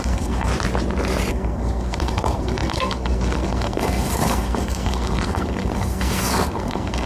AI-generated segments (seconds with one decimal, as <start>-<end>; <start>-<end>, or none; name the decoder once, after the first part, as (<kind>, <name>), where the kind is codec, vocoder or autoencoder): 0.0-0.5 (codec, SNAC); 1.3-7.1

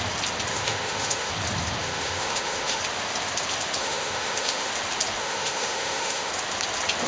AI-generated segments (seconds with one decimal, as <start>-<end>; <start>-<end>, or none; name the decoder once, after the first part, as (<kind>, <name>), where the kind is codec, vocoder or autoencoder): 0.5-1.3 (autoencoder, DAC-VAE); 1.8-2.8; 3.8-4.7; 5.2-6.3